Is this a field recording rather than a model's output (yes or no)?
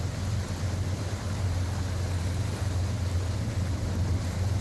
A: yes